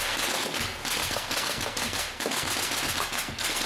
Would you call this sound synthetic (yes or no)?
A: yes